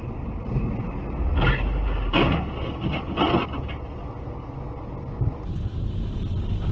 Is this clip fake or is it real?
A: real